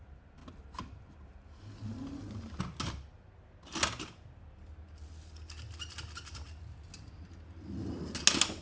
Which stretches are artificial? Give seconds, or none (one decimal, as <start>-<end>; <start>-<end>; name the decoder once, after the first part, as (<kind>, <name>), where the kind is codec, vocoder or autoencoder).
none